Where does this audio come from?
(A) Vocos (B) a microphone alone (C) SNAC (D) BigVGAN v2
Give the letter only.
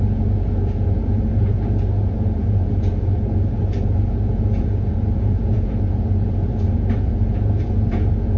A